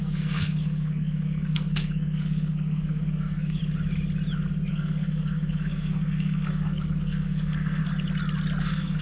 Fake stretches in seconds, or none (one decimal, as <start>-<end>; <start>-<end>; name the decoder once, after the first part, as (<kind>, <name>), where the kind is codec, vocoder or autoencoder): 0.0-3.6 (codec, SNAC); 4.7-7.8; 8.6-9.0